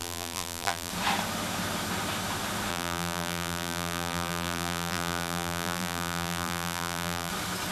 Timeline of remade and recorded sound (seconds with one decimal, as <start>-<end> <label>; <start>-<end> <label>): 0.0-0.9 remade; 0.9-2.7 recorded; 2.7-7.3 remade; 7.3-7.7 recorded